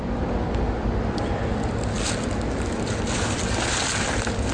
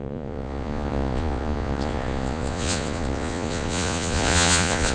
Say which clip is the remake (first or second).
second